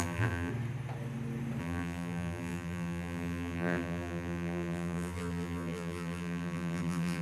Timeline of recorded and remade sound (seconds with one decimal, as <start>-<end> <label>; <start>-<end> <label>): 0.0-0.5 remade; 0.5-1.6 recorded; 1.6-7.2 remade